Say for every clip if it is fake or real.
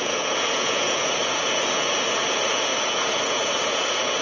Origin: fake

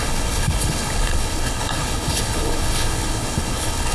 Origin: fake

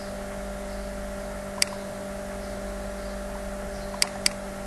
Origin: real